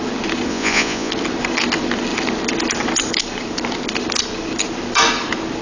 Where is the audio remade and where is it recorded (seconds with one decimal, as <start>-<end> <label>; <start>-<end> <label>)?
0.0-0.5 recorded; 0.5-1.1 remade; 1.1-5.6 recorded